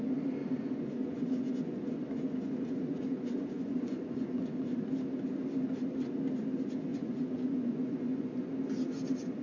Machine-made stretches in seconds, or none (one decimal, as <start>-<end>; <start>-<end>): 0.4-4.8; 6.9-8.5